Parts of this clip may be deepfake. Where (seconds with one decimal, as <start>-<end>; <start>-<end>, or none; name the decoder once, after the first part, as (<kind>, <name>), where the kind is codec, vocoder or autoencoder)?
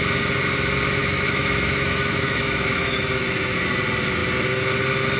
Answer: 1.0-3.8 (autoencoder, DAC-VAE)